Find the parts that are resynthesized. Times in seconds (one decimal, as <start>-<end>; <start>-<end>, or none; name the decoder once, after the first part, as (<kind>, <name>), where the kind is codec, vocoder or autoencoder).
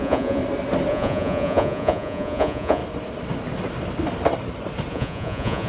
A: 0.0-0.4 (vocoder, Vocos); 0.9-2.8; 4.9-5.7